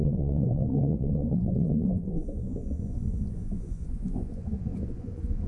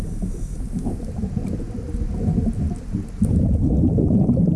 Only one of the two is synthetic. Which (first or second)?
first